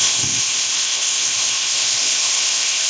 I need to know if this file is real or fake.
fake